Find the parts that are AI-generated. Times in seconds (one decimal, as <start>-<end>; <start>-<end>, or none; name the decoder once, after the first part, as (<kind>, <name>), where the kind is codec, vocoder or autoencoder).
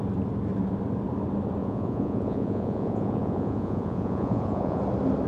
1.6-4.8 (vocoder, Vocos)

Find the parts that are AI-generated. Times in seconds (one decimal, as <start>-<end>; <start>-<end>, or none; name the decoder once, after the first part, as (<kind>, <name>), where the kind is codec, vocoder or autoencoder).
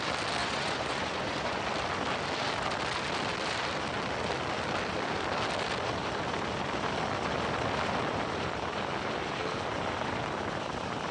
0.4-1.6 (vocoder, Vocos)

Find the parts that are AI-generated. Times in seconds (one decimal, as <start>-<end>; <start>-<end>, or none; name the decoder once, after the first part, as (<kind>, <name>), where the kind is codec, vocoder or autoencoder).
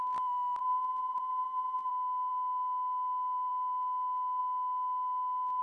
0.6-1.9 (vocoder, Vocos)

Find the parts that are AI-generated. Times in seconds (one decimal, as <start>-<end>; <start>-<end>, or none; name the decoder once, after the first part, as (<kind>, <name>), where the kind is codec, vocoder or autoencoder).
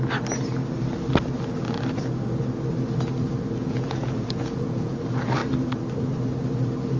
3.6-5.0 (vocoder, Vocos)